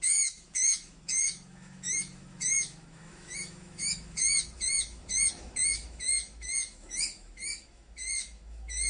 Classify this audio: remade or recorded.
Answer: remade